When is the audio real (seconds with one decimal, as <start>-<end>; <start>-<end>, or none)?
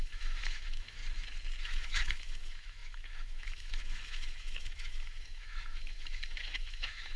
1.0-1.6